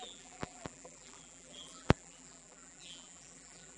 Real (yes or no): no